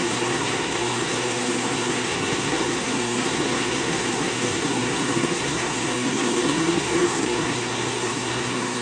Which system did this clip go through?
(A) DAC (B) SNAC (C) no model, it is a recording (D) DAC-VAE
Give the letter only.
B